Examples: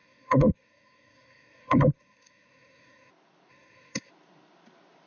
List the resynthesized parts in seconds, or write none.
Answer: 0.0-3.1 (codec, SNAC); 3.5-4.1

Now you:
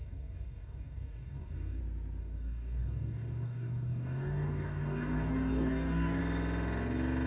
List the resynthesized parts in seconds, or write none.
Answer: 0.0-1.8 (codec, DAC); 2.2-6.2

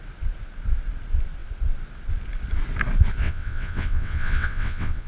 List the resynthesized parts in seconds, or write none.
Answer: 3.2-5.1 (vocoder, WaveNeXt)